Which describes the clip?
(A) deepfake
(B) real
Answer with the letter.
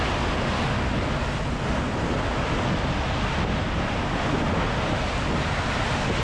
B